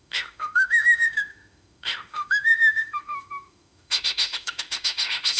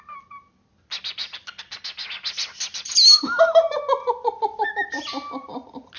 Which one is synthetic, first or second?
first